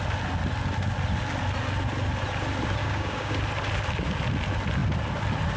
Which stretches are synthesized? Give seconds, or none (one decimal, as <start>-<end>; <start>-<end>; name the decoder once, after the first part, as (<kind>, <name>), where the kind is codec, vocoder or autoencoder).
2.8-3.3 (codec, DAC)